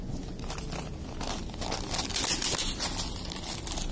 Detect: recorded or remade recorded